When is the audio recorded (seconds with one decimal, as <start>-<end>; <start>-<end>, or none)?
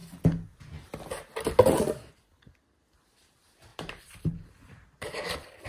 0.0-3.7; 5.3-5.7